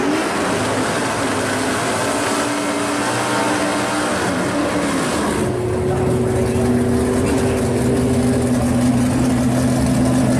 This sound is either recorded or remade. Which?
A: recorded